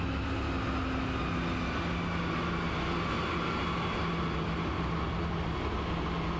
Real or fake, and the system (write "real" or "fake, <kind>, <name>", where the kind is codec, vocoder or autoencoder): real